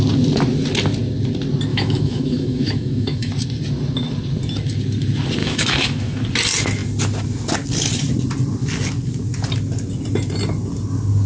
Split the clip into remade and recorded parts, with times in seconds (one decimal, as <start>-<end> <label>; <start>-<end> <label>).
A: 0.0-1.7 recorded; 1.7-3.3 remade; 3.3-5.4 recorded; 5.4-6.2 remade; 6.2-11.3 recorded